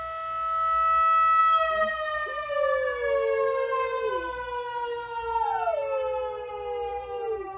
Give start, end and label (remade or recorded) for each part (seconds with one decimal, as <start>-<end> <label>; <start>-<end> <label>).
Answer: 0.0-6.9 recorded; 6.9-7.6 remade